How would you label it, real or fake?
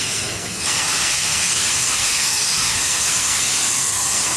fake